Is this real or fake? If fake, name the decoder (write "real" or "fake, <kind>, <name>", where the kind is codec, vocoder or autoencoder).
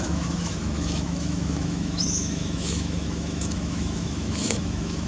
fake, autoencoder, DAC-VAE